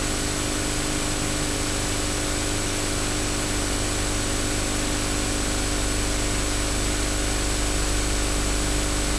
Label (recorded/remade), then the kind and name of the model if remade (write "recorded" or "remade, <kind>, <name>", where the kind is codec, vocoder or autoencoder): recorded